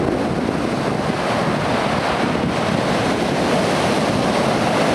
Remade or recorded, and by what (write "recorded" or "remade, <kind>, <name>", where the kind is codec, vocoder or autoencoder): recorded